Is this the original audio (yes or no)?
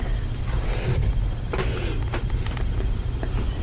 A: yes